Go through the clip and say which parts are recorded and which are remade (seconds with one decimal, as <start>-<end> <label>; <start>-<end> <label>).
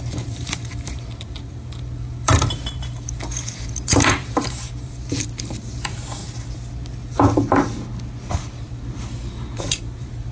0.0-6.2 remade; 6.2-8.3 recorded; 8.3-10.3 remade